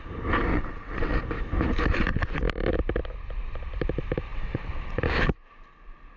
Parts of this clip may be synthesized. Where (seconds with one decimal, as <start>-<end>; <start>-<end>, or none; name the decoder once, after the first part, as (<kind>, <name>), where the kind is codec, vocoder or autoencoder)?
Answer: 0.5-1.2 (vocoder, WaveNeXt); 4.3-5.0

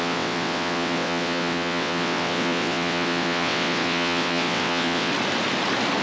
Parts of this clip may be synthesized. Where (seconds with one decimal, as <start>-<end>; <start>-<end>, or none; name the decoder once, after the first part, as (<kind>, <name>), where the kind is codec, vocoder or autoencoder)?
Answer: 0.0-5.1 (vocoder, WaveNeXt)

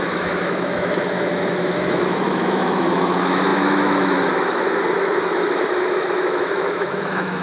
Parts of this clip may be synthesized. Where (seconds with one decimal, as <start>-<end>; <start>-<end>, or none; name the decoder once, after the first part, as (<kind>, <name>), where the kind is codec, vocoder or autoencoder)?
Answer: 0.0-7.4 (autoencoder, DAC-VAE)